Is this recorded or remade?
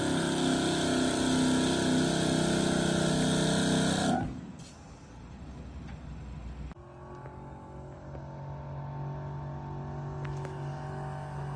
recorded